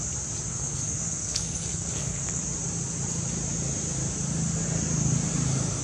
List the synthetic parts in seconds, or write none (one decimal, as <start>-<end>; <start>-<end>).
0.5-2.4